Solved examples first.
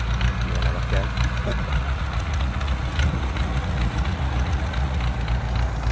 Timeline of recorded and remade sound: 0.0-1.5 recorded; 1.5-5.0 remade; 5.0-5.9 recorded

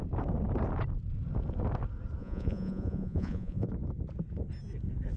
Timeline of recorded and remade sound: 0.0-2.2 recorded; 2.2-3.7 remade; 3.7-5.2 recorded

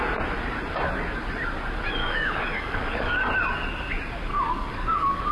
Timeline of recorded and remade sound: 0.0-2.0 recorded; 2.0-3.2 remade; 3.2-4.3 recorded; 4.3-5.3 remade

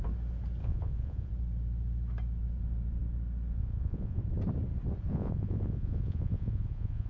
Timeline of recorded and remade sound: 0.0-0.6 recorded; 0.6-1.3 remade; 1.3-3.6 recorded; 3.6-4.2 remade; 4.2-5.1 recorded; 5.1-7.1 remade

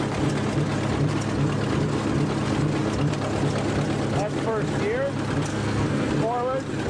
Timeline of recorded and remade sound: 0.0-5.5 recorded; 5.5-6.1 remade; 6.1-6.9 recorded

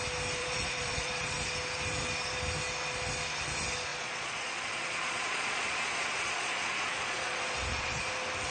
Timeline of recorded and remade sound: 0.0-0.4 recorded; 0.4-1.3 remade; 1.3-3.9 recorded; 3.9-8.0 remade; 8.0-8.5 recorded

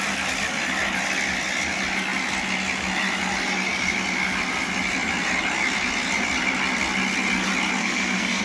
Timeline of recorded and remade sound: 0.0-7.8 recorded; 7.8-8.4 remade